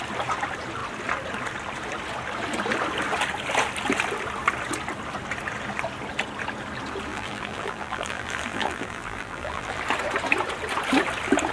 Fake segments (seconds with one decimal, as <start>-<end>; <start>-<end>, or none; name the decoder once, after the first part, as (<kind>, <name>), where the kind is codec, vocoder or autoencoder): 7.1-9.8 (vocoder, BigVGAN v2)